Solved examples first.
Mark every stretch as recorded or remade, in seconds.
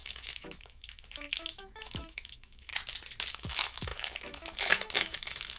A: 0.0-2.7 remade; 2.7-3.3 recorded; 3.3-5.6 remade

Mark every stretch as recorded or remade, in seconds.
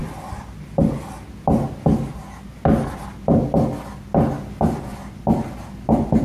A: 0.0-6.2 recorded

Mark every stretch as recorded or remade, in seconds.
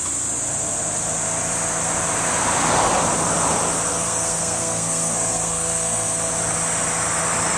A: 0.0-3.9 recorded; 3.9-6.3 remade; 6.3-7.6 recorded